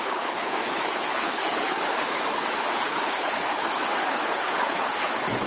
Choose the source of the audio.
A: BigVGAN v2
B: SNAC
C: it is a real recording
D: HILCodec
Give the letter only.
D